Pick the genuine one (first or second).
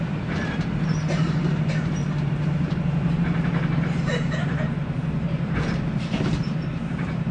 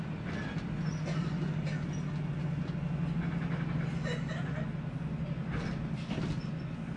second